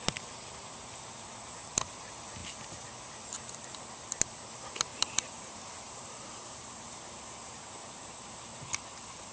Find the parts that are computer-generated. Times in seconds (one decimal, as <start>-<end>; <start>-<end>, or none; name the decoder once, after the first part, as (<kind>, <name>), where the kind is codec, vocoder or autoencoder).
4.9-8.4 (vocoder, BigVGAN v2)